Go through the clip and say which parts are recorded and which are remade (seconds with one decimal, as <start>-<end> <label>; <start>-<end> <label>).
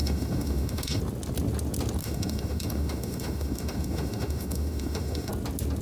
0.0-1.0 remade; 1.0-2.0 recorded; 2.0-5.3 remade; 5.3-5.8 recorded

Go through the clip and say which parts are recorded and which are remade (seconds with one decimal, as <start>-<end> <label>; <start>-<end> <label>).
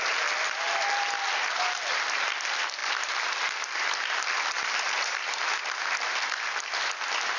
0.0-2.8 recorded; 2.8-5.0 remade; 5.0-7.4 recorded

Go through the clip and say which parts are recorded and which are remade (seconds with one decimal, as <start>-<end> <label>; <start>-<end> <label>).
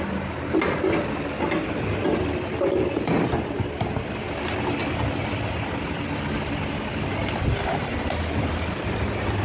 0.0-9.4 recorded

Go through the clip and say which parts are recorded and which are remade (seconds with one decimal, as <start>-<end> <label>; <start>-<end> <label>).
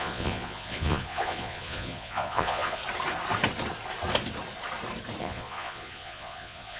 0.0-2.8 remade; 2.8-5.2 recorded; 5.2-6.8 remade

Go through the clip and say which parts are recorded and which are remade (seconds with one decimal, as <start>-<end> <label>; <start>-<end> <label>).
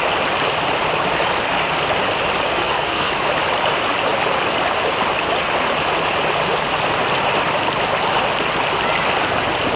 0.0-2.6 recorded; 2.6-3.1 remade; 3.1-9.8 recorded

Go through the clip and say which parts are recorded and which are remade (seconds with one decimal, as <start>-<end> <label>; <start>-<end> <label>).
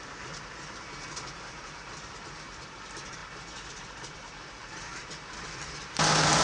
0.0-3.2 remade; 3.2-3.7 recorded; 3.7-6.4 remade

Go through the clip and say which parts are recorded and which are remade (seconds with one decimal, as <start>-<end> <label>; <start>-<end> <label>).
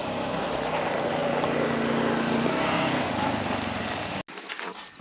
0.0-0.5 remade; 0.5-2.5 recorded; 2.5-3.1 remade; 3.1-5.0 recorded